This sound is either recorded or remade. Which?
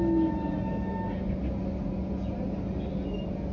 recorded